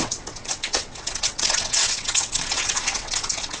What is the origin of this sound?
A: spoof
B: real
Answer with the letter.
A